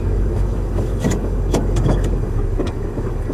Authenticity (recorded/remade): remade